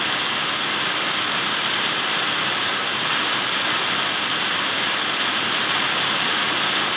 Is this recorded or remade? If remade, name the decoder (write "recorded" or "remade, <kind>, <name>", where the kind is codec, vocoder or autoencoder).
recorded